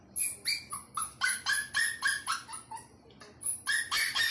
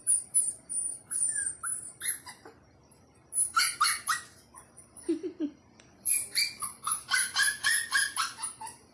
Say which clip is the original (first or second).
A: first